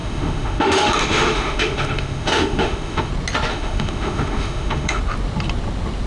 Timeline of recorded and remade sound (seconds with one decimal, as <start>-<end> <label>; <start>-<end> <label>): 0.0-3.1 remade; 3.1-3.5 recorded; 3.5-5.0 remade; 5.0-6.1 recorded